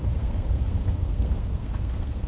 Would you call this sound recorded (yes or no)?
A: no